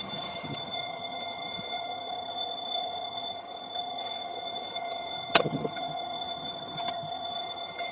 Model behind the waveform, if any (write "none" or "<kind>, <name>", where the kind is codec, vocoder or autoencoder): vocoder, HiFi-GAN